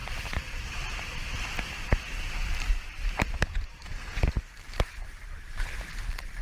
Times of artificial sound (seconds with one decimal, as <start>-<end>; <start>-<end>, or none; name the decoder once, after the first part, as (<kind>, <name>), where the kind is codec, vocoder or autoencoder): 0.0-6.4 (vocoder, BigVGAN v2)